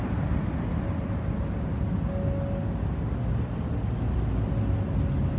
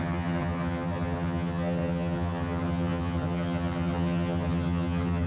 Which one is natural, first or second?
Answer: first